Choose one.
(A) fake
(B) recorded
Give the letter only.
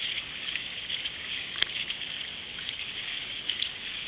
A